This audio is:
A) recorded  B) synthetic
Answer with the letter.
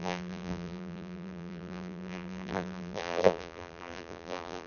B